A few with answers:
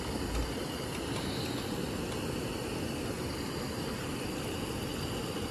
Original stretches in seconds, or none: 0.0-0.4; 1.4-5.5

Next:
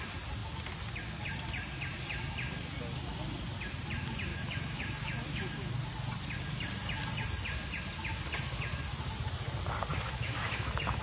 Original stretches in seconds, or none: 0.0-4.3; 5.7-9.9

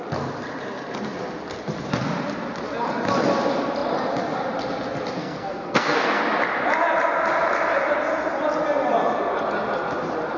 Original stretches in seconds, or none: 0.0-5.2; 6.2-10.4

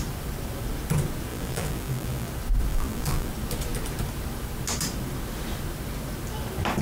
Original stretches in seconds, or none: 0.0-1.3; 2.3-2.7; 3.3-6.8

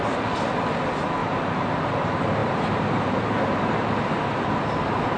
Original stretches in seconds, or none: 0.0-1.2; 1.9-2.4

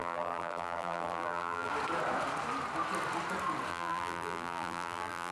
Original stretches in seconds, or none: 1.7-3.7